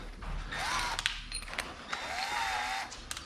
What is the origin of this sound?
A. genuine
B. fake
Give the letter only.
A